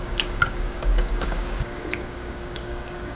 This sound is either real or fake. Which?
fake